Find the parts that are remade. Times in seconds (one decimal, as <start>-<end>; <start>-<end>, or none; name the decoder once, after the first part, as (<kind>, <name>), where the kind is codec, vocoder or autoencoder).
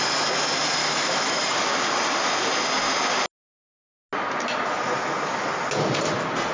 0.8-1.4 (autoencoder, DAC-VAE)